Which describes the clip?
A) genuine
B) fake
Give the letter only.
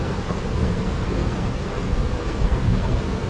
B